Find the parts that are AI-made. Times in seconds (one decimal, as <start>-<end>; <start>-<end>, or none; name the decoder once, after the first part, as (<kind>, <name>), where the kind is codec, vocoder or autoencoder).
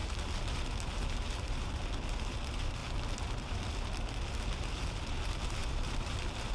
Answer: none